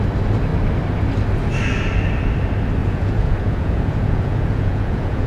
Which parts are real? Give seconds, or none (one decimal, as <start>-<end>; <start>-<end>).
0.0-2.8